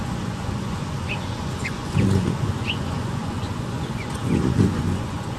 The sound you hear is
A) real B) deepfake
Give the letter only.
B